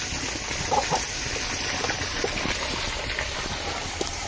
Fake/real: real